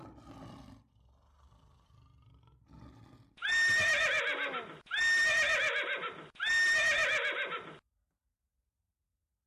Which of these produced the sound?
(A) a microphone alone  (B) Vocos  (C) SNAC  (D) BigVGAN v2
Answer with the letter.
A